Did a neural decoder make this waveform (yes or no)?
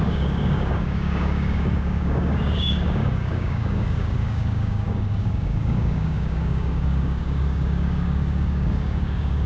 yes